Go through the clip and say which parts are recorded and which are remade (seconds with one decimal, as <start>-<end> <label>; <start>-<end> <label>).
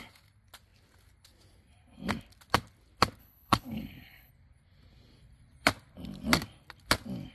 0.0-3.2 recorded; 3.2-4.3 remade; 4.3-7.3 recorded